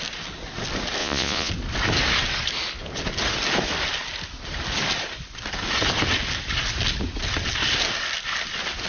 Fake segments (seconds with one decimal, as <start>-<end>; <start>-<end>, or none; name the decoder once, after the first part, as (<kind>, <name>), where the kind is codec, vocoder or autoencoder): 1.0-1.5 (vocoder, Vocos)